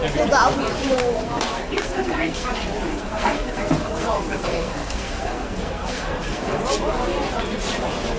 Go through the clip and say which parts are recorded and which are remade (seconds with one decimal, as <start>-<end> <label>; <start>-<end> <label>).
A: 0.0-0.8 recorded; 0.8-2.5 remade; 2.5-2.9 recorded; 2.9-6.6 remade; 6.6-8.2 recorded